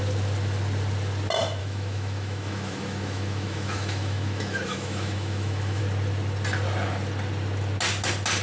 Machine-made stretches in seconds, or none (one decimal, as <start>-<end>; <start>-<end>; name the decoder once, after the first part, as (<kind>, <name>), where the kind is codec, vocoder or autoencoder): 1.6-5.8 (autoencoder, DAC-VAE)